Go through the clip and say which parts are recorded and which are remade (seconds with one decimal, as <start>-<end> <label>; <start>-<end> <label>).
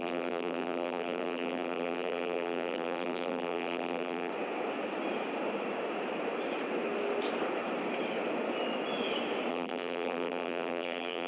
0.0-4.3 remade; 4.3-9.5 recorded; 9.5-11.3 remade